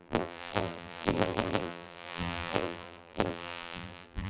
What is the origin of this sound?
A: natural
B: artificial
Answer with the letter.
B